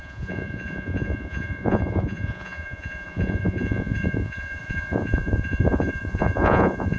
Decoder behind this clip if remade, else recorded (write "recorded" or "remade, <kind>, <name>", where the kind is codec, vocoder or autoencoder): remade, vocoder, Vocos